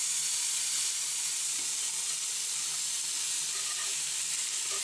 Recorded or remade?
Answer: recorded